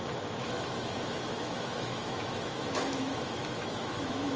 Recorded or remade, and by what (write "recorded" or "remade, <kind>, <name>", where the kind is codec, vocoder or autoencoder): remade, autoencoder, DAC-VAE